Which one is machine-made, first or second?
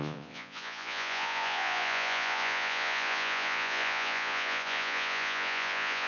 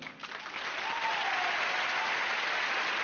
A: first